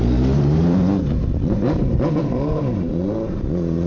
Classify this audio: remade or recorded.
remade